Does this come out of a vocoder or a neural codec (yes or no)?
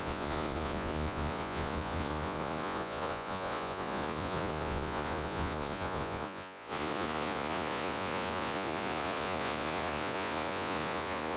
yes